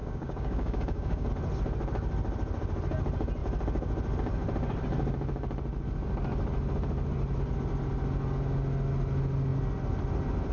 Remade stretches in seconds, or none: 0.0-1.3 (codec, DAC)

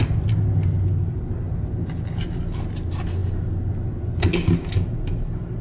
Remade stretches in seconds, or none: none